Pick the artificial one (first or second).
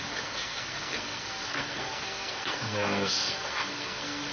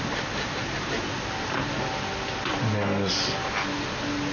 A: first